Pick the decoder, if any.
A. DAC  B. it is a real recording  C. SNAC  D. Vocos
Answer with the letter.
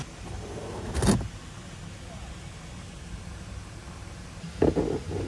B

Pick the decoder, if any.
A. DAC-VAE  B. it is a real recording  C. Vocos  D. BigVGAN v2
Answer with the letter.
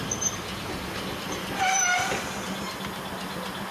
B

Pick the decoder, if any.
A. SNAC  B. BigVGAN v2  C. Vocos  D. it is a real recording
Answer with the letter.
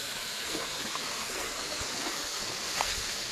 A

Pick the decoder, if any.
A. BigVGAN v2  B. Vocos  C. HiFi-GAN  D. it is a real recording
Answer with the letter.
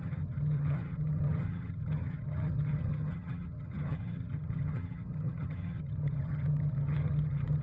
C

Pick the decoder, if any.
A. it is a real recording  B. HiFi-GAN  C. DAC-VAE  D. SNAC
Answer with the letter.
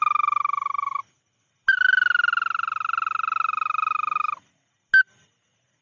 A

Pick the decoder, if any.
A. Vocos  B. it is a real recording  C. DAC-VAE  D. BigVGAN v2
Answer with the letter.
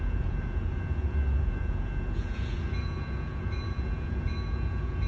A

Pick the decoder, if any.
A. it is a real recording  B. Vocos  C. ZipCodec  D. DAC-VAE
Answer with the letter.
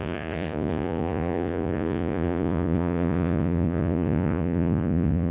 B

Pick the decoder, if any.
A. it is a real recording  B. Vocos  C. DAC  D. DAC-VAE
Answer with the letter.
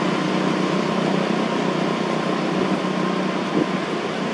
A